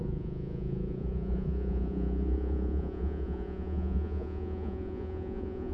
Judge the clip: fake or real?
fake